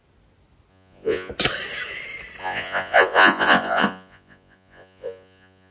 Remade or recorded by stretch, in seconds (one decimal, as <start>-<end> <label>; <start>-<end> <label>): 0.0-0.7 recorded; 0.7-1.3 remade; 1.3-2.4 recorded; 2.4-5.7 remade